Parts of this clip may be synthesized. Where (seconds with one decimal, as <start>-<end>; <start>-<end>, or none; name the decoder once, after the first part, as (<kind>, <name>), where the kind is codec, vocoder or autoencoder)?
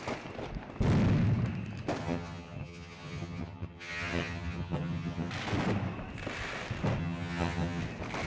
2.0-5.3 (vocoder, HiFi-GAN); 7.0-7.8